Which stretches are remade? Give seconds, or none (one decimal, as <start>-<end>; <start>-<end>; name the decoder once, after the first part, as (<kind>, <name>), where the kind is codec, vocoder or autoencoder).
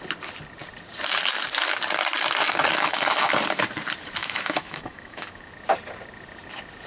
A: 2.7-3.3 (autoencoder, DAC-VAE); 4.2-5.5